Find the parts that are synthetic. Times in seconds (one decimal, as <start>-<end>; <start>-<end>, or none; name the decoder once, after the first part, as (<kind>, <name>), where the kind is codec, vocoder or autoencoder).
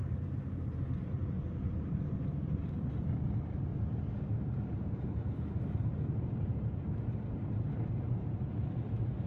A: 0.0-3.7 (vocoder, BigVGAN v2); 4.4-9.3